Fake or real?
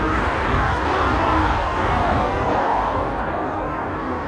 fake